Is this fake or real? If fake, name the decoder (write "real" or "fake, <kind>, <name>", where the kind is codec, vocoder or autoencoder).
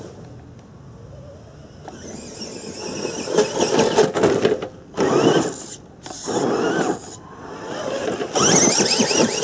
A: real